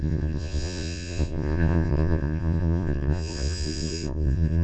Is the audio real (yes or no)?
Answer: no